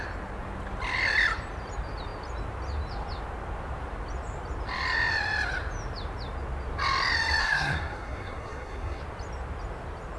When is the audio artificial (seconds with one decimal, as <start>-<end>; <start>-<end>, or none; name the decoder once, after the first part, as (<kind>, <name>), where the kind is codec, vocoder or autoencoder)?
7.4-9.0 (codec, SNAC)